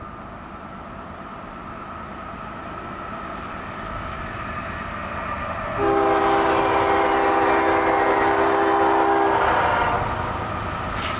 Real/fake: real